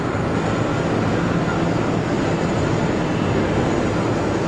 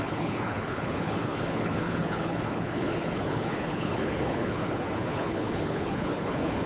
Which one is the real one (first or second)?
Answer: first